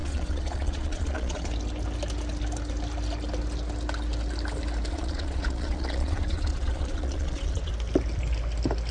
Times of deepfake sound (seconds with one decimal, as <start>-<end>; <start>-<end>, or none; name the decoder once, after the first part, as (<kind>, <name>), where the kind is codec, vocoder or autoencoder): 0.0-1.5 (vocoder, Vocos); 4.9-7.7